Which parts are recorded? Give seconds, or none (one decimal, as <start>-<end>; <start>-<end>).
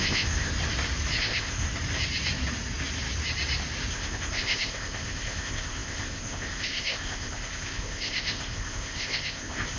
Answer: 0.5-1.2; 1.7-3.9